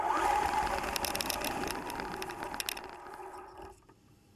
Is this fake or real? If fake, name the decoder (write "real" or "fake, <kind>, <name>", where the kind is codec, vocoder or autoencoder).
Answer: real